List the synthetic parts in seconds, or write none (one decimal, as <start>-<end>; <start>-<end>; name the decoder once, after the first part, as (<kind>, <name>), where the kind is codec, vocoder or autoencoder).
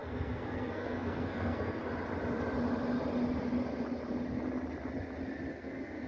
0.0-1.8 (codec, SNAC); 5.5-6.1